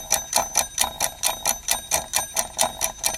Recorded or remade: recorded